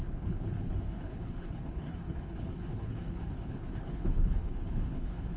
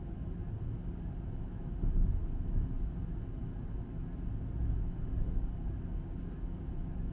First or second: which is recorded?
second